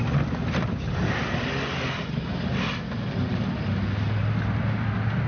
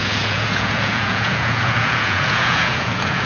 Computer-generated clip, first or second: second